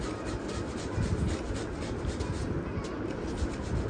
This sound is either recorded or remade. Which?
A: recorded